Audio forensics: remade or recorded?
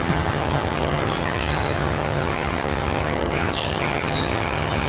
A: remade